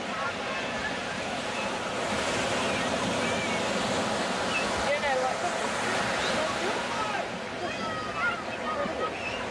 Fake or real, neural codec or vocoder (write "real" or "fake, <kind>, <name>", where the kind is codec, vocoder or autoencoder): real